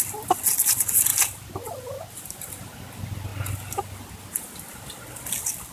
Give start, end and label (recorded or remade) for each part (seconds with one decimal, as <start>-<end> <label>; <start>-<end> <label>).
0.0-5.7 recorded